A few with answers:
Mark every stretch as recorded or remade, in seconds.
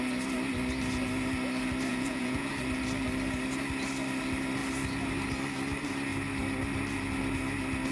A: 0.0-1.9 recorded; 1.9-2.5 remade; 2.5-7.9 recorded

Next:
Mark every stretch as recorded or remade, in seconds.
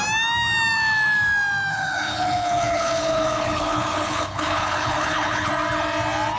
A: 0.0-1.7 recorded; 1.7-5.5 remade; 5.5-6.4 recorded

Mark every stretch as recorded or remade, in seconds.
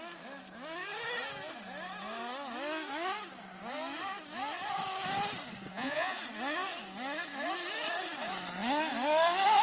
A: 0.0-5.7 recorded; 5.7-6.2 remade; 6.2-9.6 recorded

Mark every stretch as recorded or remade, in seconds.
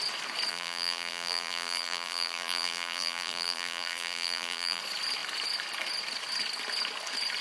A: 0.0-0.5 recorded; 0.5-4.8 remade; 4.8-7.4 recorded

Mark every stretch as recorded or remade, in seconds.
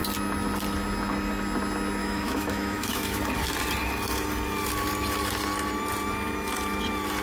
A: 0.0-2.0 recorded; 2.0-3.2 remade; 3.2-7.2 recorded